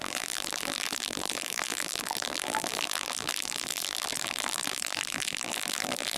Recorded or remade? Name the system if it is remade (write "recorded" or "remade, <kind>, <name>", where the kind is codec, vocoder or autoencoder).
remade, vocoder, BigVGAN v2